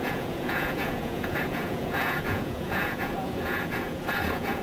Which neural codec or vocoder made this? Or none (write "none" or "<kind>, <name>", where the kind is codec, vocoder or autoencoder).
vocoder, Vocos